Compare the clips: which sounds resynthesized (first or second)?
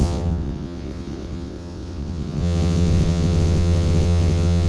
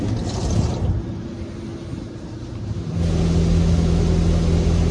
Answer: first